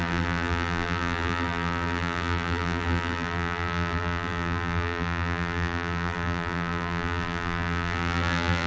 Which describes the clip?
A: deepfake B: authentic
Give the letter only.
A